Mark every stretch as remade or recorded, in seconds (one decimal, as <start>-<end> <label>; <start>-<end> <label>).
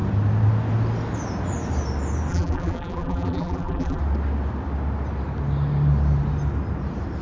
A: 0.0-2.3 recorded; 2.3-4.0 remade; 4.0-7.2 recorded